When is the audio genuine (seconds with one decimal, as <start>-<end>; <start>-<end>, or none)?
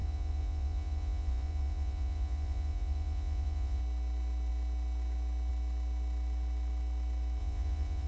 3.8-7.4